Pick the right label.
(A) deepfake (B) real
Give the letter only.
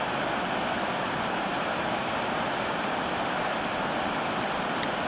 B